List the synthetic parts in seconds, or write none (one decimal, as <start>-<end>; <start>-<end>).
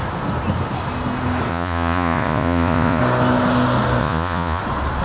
1.5-3.0; 4.0-4.6